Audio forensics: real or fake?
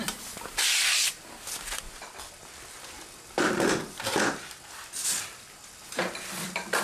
real